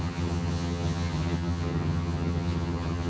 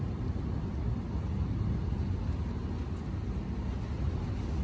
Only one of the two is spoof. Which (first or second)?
first